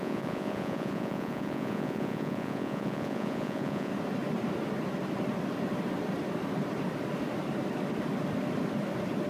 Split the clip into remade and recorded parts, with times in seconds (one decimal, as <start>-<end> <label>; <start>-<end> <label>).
0.0-3.9 remade; 3.9-9.3 recorded